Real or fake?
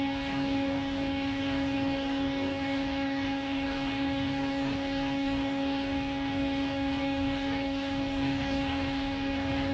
fake